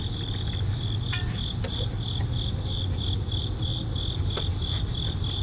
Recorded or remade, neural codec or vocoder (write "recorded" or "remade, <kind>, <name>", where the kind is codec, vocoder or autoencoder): recorded